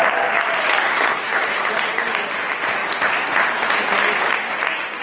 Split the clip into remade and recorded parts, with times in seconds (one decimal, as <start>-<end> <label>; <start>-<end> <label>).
0.0-0.8 recorded; 0.8-1.5 remade; 1.5-5.0 recorded